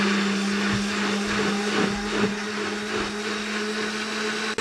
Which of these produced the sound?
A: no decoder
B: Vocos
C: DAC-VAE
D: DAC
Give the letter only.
A